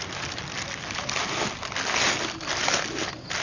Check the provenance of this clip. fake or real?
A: real